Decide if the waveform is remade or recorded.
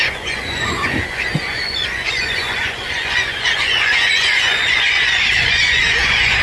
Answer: remade